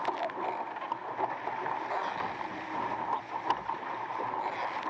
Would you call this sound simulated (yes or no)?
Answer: no